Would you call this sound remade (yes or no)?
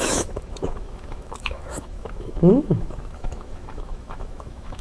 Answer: yes